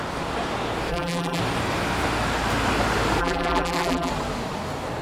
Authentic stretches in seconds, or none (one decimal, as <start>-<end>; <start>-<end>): 0.0-0.9; 1.4-3.2; 4.1-5.0